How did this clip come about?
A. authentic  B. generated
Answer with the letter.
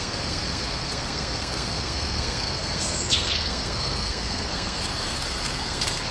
B